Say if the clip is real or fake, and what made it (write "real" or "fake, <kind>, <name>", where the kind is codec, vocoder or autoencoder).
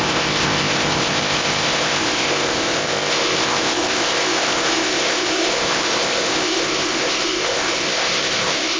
fake, codec, ZipCodec